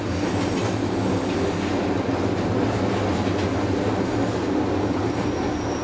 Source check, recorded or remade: recorded